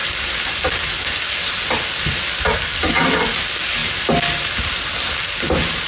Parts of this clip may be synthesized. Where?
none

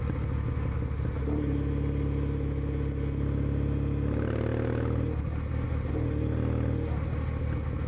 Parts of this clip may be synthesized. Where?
none